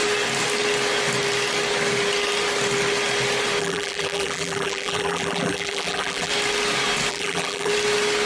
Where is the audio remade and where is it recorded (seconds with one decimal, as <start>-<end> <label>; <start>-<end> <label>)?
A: 0.0-3.6 recorded; 3.6-6.3 remade; 6.3-7.1 recorded; 7.1-7.7 remade; 7.7-8.3 recorded